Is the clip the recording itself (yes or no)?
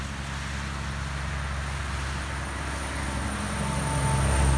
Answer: yes